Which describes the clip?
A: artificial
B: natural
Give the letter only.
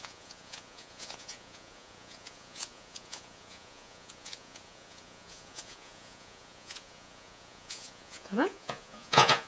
A